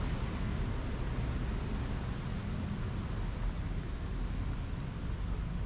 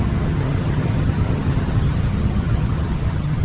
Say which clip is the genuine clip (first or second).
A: first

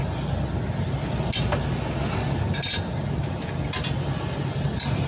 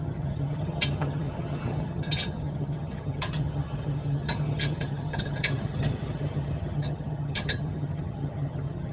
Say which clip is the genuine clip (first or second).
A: first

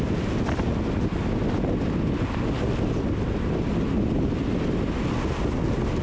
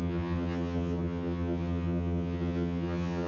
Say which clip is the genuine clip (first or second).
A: first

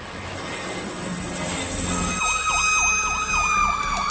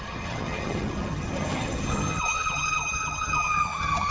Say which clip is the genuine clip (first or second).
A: first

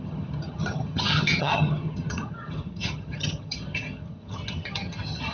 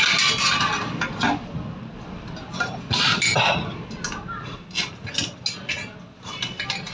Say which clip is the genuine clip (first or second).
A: second